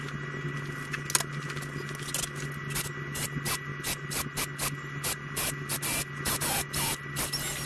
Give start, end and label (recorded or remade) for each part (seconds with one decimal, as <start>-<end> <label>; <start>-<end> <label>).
0.0-7.7 recorded